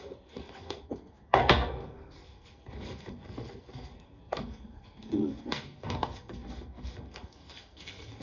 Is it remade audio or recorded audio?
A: remade